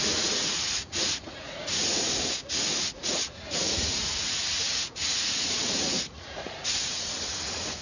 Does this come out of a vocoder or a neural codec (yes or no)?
yes